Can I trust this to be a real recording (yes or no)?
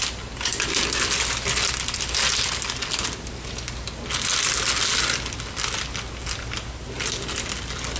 yes